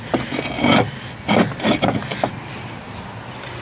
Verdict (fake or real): real